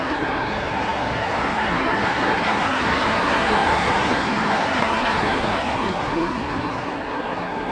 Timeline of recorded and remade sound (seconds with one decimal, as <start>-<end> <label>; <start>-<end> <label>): 0.0-7.7 remade